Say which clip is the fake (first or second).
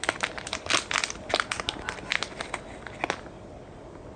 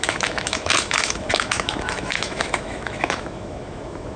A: second